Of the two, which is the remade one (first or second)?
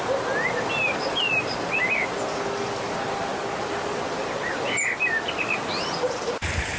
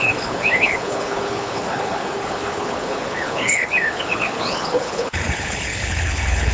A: second